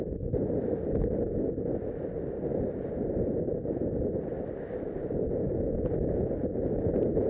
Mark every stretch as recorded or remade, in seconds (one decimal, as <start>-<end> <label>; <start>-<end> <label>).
0.0-7.3 recorded